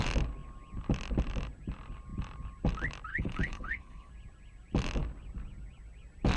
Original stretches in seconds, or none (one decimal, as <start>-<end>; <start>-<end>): 0.0-3.1; 4.1-6.4